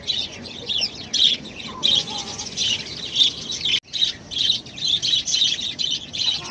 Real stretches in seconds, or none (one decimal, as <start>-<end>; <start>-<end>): 2.6-5.8